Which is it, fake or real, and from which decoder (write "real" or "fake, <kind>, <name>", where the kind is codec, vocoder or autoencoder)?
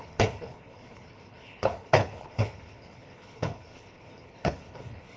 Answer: fake, codec, HILCodec